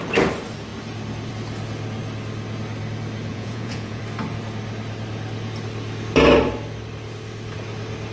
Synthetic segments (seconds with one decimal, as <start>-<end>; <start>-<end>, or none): 3.3-4.0